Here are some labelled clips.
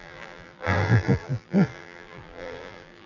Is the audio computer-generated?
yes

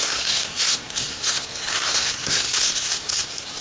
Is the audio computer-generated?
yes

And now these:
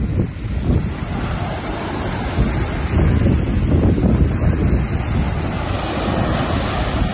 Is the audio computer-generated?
no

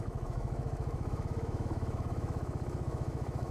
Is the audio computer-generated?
yes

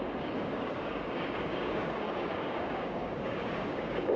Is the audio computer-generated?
yes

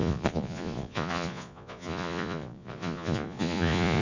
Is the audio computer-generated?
yes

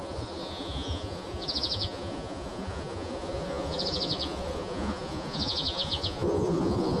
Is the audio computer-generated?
yes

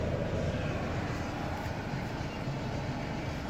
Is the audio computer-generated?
no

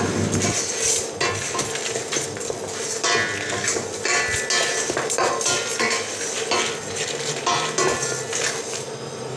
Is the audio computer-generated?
no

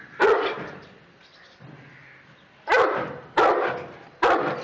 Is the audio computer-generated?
no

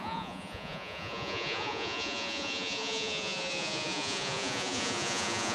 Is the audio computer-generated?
yes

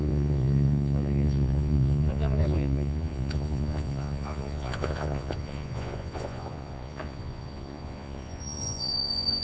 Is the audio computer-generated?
yes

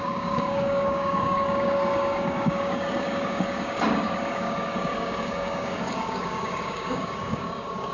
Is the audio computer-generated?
yes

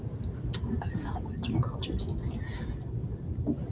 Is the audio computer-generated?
no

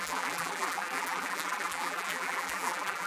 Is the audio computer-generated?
yes